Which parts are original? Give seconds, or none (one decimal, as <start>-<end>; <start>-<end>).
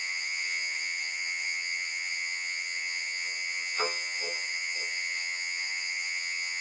none